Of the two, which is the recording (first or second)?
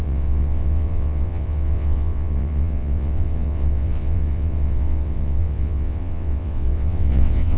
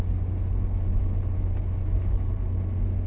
second